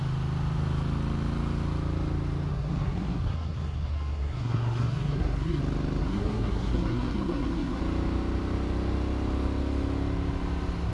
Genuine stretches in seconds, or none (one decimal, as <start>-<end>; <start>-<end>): 0.0-2.5; 5.6-6.0; 7.8-10.9